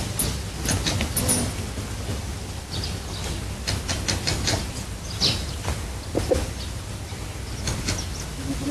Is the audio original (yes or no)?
yes